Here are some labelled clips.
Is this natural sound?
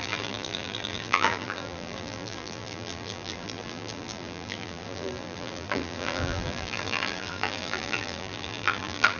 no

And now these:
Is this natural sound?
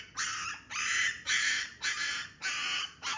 yes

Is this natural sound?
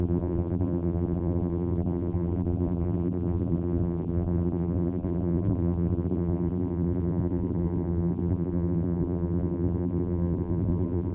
no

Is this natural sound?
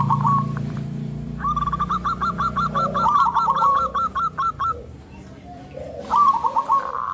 no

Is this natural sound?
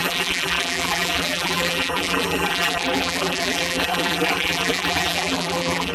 no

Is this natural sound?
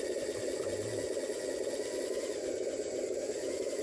yes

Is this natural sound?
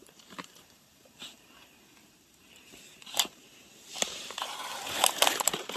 no